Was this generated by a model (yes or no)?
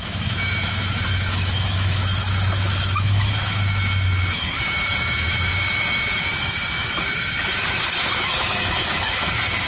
yes